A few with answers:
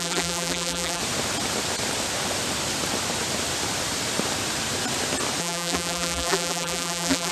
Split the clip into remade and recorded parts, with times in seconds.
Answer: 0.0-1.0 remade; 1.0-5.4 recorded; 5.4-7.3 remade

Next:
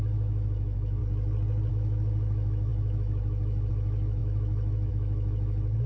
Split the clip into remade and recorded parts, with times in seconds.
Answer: 0.0-1.0 remade; 1.0-1.7 recorded; 1.7-5.9 remade

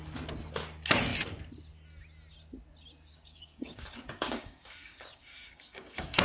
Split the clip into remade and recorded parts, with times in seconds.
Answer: 0.0-3.1 recorded; 3.1-6.2 remade

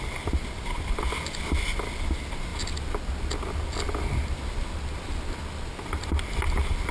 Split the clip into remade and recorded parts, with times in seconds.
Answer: 0.0-6.9 recorded